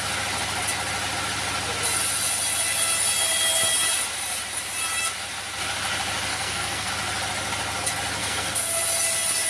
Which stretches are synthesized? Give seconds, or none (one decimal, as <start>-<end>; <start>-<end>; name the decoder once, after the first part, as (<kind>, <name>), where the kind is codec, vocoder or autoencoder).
6.3-6.9 (codec, SNAC); 8.2-8.7